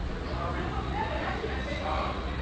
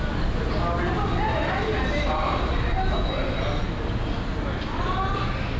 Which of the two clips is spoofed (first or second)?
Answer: first